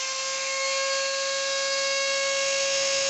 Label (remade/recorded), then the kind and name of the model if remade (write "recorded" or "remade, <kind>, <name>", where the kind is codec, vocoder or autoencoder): remade, autoencoder, DAC-VAE